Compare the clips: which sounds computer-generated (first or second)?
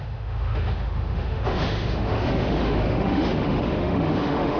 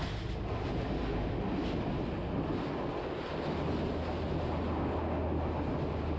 first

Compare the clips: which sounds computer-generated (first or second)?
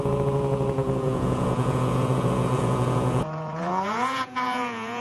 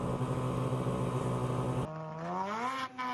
first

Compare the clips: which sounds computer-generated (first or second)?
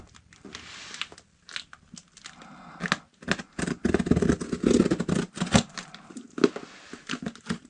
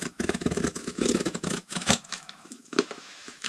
second